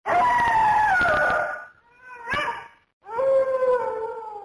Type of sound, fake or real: real